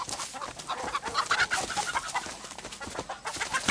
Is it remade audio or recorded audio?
recorded